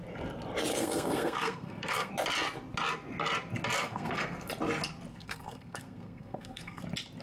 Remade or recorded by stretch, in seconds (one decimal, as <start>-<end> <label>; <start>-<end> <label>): 0.0-0.7 recorded; 0.7-2.1 remade; 2.1-3.8 recorded; 3.8-4.5 remade; 4.5-5.1 recorded; 5.1-6.8 remade; 6.8-7.2 recorded

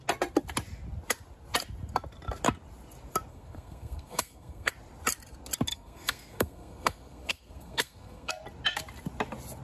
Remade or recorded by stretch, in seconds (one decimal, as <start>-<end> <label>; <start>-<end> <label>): 0.0-3.3 recorded; 3.3-4.7 remade; 4.7-5.7 recorded; 5.7-8.3 remade; 8.3-9.6 recorded

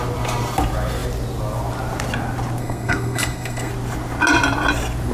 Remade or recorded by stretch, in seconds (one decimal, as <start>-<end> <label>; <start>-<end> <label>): 0.0-2.6 recorded; 2.6-3.7 remade; 3.7-5.1 recorded

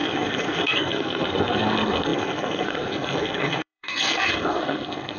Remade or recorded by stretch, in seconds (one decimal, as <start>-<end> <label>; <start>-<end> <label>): 0.0-5.2 remade

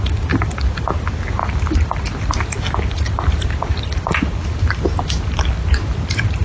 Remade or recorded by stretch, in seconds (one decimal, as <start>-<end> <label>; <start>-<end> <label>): 0.0-6.4 recorded

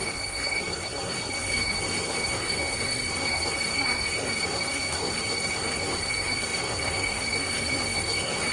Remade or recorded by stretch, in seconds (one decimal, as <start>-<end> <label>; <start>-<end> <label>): 0.0-8.5 remade

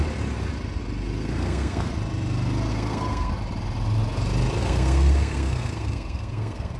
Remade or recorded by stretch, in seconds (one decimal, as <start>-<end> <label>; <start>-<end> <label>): 0.0-1.2 recorded; 1.2-1.9 remade; 1.9-2.7 recorded; 2.7-3.3 remade; 3.3-4.6 recorded; 4.6-6.8 remade